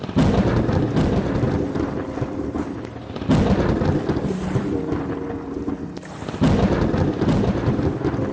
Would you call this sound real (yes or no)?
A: yes